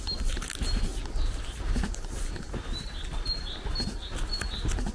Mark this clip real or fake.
real